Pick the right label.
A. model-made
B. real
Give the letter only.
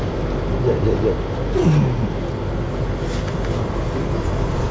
B